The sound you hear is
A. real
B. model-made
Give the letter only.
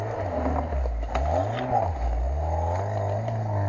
A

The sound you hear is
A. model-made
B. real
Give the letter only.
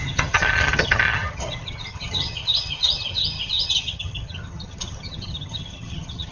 A